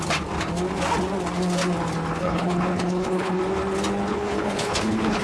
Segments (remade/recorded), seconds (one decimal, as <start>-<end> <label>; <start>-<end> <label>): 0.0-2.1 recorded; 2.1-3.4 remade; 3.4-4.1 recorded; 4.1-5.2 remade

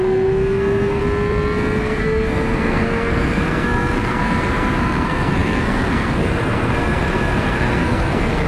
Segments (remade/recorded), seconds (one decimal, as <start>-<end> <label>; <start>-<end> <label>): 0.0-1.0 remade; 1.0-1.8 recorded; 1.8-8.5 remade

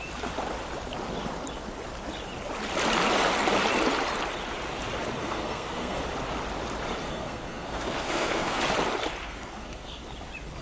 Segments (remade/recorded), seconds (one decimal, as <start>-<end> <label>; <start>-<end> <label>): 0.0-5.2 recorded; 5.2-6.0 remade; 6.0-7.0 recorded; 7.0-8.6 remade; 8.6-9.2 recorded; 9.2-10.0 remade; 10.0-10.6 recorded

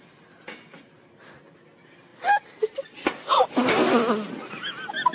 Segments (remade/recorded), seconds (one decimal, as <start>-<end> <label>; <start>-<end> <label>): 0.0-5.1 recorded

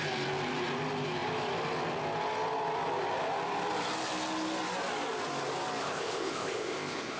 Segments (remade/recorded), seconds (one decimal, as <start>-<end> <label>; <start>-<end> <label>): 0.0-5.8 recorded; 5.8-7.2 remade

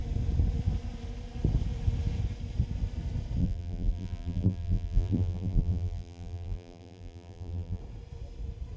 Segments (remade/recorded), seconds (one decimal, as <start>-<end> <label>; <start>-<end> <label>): 0.0-3.4 recorded; 3.4-7.8 remade; 7.8-8.8 recorded

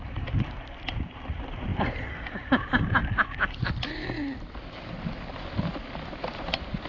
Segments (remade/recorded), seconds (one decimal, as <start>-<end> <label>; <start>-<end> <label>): 0.0-3.0 remade; 3.0-6.0 recorded; 6.0-6.9 remade